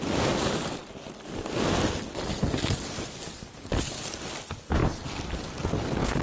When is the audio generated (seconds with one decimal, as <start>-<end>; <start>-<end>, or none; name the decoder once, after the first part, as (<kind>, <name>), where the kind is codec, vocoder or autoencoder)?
none